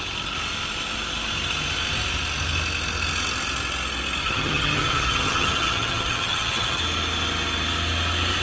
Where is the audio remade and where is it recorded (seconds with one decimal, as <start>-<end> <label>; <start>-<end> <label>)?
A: 0.0-4.2 recorded; 4.2-6.8 remade; 6.8-8.4 recorded